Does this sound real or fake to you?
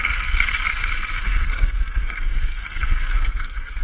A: fake